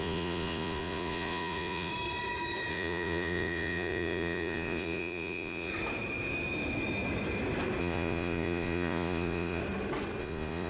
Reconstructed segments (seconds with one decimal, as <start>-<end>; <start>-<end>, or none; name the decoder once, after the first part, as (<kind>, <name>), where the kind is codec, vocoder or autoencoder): 0.0-1.9 (vocoder, Vocos); 2.7-5.7; 7.8-9.6; 10.2-10.7